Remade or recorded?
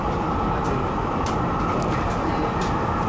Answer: recorded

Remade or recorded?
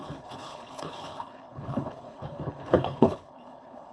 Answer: remade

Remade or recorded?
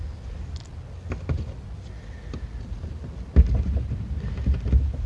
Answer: recorded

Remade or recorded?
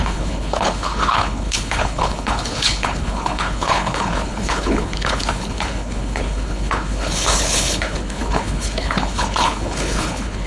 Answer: remade